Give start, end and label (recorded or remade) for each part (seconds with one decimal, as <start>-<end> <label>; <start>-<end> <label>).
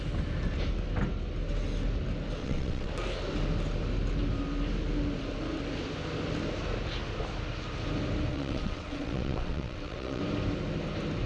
0.0-2.4 recorded; 2.4-2.9 remade; 2.9-8.3 recorded; 8.3-10.2 remade; 10.2-11.3 recorded